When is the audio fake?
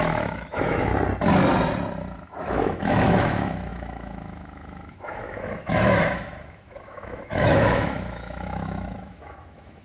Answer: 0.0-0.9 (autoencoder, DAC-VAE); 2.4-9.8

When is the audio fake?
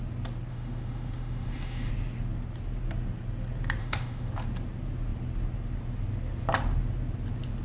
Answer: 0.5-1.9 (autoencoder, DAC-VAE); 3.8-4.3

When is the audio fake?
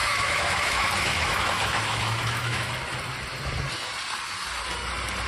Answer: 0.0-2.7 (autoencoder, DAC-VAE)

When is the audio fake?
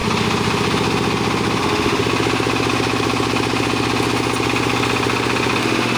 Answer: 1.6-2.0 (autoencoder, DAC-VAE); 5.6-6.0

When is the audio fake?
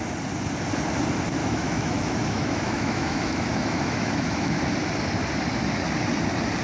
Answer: 1.4-4.6 (autoencoder, DAC-VAE)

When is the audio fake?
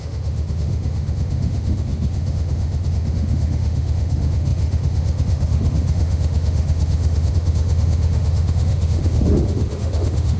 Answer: 0.0-10.4 (autoencoder, DAC-VAE)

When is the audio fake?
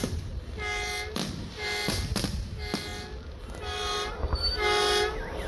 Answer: none